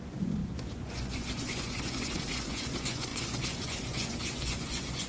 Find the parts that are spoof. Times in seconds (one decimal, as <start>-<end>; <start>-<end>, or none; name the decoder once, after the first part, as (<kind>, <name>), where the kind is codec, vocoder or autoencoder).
0.0-5.1 (vocoder, Vocos)